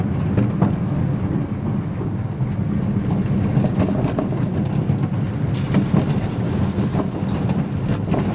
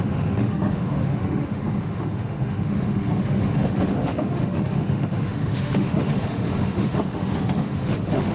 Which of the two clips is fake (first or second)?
second